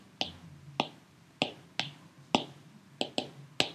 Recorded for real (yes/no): yes